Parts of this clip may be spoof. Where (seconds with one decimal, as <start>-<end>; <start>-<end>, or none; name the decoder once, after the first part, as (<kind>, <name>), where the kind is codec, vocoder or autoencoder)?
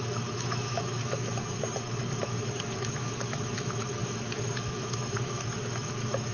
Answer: 0.0-1.4 (autoencoder, DAC-VAE); 2.2-6.3